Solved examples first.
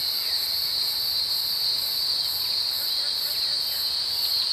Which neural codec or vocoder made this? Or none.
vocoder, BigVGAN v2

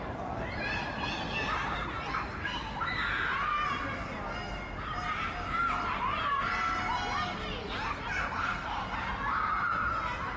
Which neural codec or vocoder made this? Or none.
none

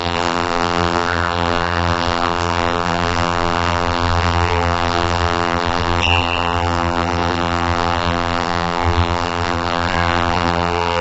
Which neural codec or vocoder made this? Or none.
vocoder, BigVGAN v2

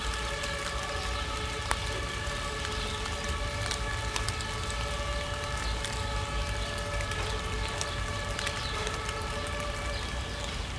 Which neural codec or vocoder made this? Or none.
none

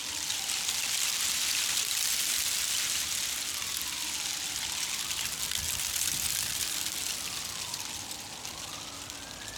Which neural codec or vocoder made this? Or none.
none